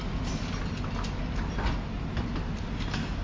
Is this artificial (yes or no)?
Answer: no